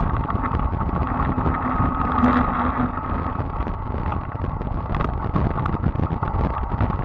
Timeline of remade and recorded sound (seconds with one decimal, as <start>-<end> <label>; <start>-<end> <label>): 0.0-7.0 recorded